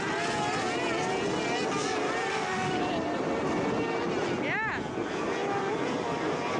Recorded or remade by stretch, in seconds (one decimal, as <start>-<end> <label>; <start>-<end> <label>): 0.0-2.3 recorded; 2.3-2.8 remade; 2.8-6.6 recorded